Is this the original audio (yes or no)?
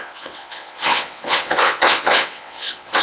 no